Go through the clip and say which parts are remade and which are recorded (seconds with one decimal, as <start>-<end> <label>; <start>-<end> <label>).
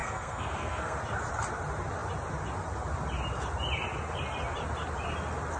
0.0-1.0 remade; 1.0-5.6 recorded